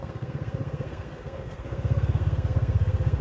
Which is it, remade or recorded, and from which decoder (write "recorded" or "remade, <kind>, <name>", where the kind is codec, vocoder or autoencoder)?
remade, codec, SNAC